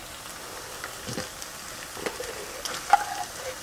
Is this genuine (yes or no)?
yes